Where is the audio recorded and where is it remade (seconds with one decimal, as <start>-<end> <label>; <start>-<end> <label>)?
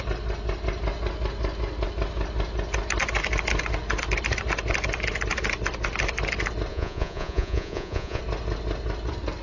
0.0-6.7 recorded; 6.7-8.2 remade; 8.2-9.4 recorded